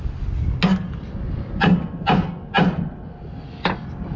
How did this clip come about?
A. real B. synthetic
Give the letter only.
A